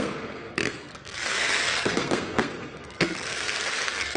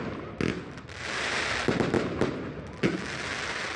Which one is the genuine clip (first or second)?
second